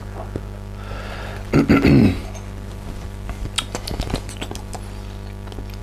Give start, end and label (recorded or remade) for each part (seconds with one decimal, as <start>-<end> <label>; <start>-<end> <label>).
0.0-5.8 recorded